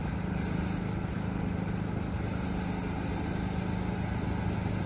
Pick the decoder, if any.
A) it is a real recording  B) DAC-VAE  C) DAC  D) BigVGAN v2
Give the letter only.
A